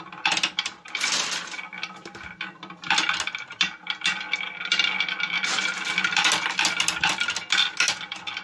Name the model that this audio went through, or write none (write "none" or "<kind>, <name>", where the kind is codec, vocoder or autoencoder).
none